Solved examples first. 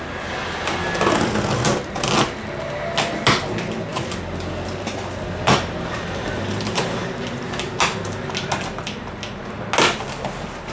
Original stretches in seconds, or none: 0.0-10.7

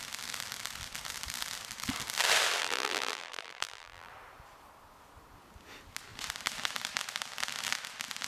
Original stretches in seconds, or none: 0.0-2.6; 4.1-8.3

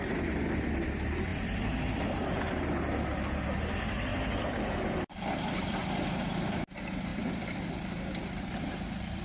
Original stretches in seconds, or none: 0.0-1.3; 2.4-4.1; 5.8-7.1; 8.5-9.2